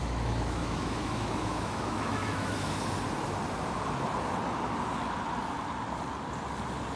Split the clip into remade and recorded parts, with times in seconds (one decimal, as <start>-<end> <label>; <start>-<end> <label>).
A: 0.0-2.8 remade; 2.8-7.0 recorded